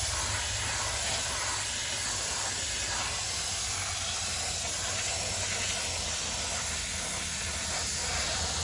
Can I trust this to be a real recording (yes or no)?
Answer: yes